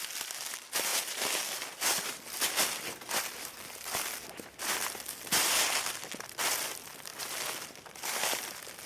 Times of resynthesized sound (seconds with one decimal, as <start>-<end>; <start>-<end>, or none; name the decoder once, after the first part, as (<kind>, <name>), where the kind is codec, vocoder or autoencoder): none